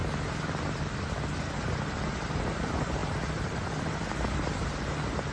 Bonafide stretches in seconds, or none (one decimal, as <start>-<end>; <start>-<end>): 0.0-5.3